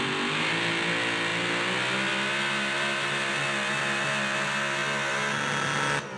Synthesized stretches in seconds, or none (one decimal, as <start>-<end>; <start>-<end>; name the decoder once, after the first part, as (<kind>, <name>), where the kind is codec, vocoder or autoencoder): none